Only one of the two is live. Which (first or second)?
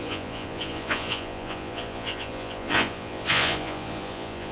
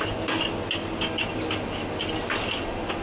second